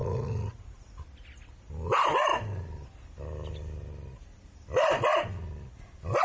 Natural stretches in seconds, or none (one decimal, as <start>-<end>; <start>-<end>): 0.8-6.2